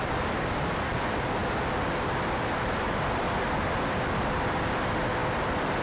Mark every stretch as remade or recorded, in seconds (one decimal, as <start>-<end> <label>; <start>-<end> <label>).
0.0-5.8 recorded